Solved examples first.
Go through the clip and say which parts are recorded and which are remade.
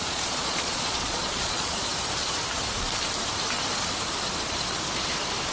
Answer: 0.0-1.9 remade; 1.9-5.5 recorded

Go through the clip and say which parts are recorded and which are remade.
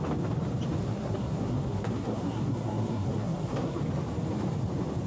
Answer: 0.0-0.8 recorded; 0.8-3.8 remade; 3.8-5.1 recorded